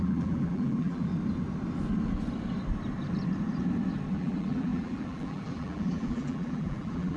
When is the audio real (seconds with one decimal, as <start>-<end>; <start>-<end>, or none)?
1.1-4.1